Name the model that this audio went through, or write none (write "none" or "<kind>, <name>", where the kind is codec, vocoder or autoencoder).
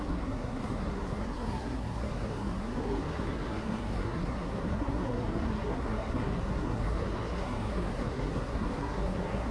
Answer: codec, SNAC